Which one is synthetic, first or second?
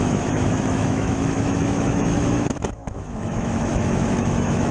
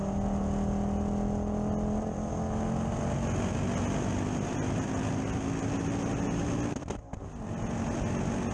first